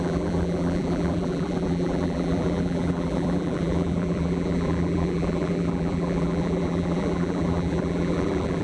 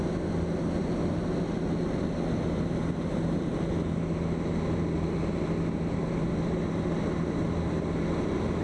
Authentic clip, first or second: second